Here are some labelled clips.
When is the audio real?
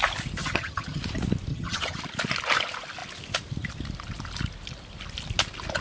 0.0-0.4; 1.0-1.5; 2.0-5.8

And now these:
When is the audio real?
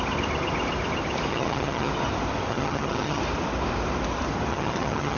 0.0-1.3; 1.9-2.5; 3.2-4.5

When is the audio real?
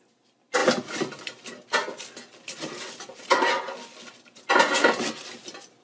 0.0-5.8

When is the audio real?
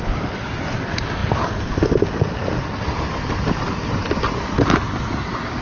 0.0-5.6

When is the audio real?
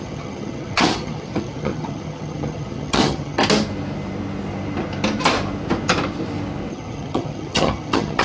3.4-6.7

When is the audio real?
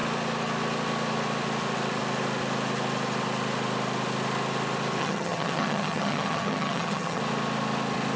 0.0-5.0; 7.2-8.2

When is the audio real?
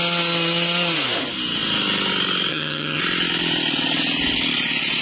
0.0-2.5; 3.0-5.0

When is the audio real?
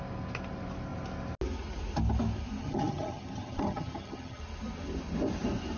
0.0-2.6; 4.4-5.8